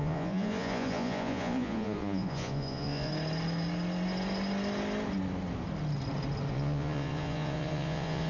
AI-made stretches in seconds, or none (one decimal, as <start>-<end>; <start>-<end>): 0.0-3.1; 6.5-8.3